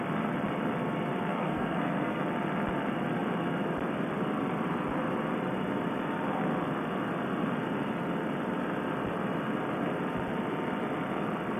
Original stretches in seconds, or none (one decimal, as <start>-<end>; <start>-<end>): 0.0-1.3; 2.2-11.6